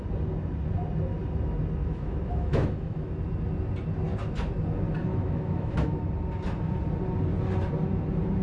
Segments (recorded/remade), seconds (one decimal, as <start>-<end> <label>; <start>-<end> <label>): 0.0-1.8 recorded; 1.8-3.1 remade; 3.1-5.0 recorded; 5.0-6.0 remade; 6.0-8.4 recorded